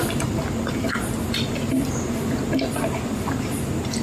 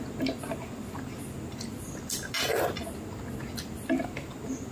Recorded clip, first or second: second